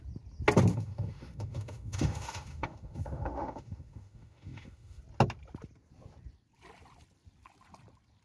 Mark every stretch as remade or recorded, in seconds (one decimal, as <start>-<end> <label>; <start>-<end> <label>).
0.0-0.7 recorded; 0.7-5.0 remade; 5.0-8.2 recorded